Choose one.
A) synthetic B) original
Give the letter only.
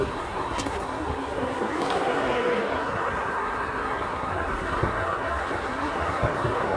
A